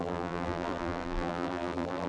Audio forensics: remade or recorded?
remade